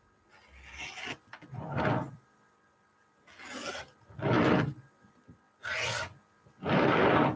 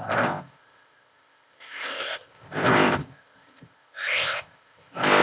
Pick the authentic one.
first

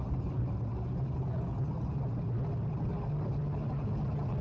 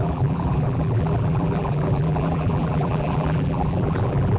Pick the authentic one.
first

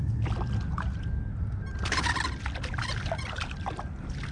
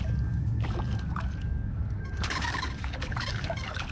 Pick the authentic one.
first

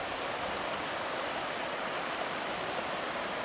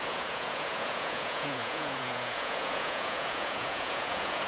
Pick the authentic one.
first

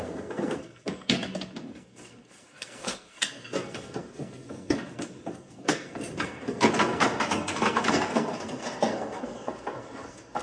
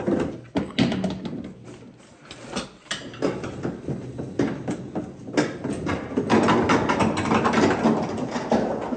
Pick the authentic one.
second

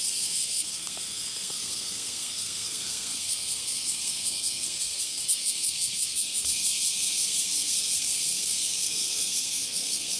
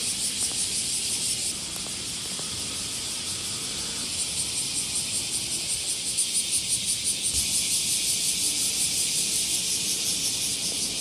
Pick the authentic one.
second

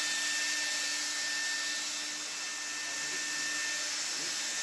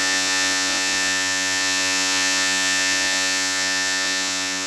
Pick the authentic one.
first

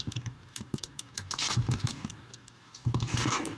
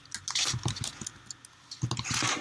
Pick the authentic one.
second